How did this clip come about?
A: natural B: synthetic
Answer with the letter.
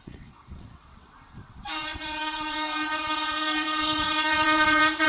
B